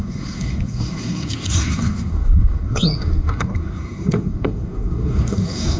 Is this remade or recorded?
remade